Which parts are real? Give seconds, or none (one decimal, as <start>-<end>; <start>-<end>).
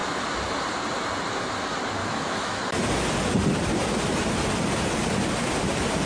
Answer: 0.0-2.0; 2.6-6.1